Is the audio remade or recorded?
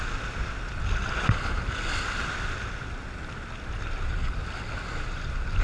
recorded